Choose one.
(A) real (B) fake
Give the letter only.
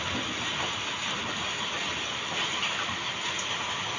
A